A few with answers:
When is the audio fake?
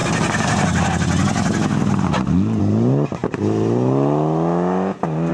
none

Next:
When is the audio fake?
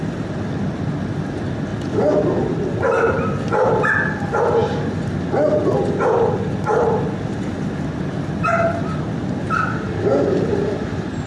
none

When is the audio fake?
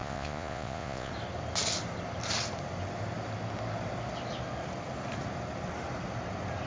0.0-1.1 (vocoder, Vocos)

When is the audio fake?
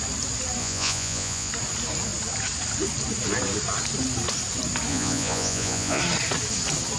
0.6-1.5 (vocoder, Vocos); 4.9-6.0